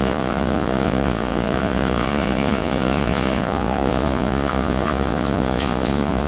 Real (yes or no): no